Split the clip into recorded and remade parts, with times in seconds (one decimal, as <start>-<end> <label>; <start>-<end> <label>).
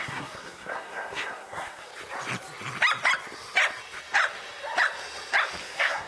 0.0-1.9 remade; 1.9-5.6 recorded; 5.6-6.1 remade